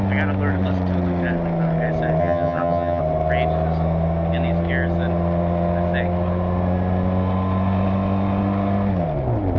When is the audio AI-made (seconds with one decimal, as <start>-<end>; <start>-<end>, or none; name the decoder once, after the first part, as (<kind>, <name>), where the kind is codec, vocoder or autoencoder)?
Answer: 2.2-3.0 (vocoder, HiFi-GAN)